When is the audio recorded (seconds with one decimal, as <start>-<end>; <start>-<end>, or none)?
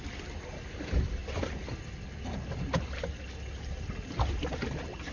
0.0-5.1